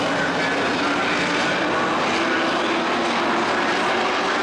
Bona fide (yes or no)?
yes